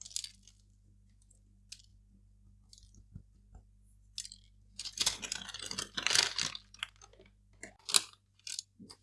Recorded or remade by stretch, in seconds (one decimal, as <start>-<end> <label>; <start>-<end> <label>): 0.0-9.0 recorded